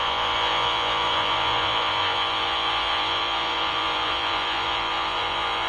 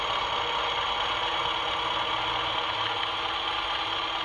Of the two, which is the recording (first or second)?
second